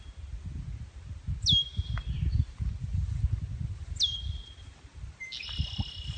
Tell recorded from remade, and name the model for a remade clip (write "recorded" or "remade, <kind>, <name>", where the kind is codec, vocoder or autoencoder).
recorded